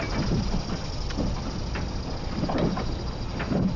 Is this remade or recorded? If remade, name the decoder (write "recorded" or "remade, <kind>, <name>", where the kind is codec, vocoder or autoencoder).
recorded